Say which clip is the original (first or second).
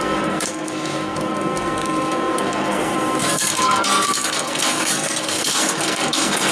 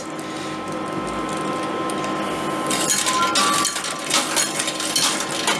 second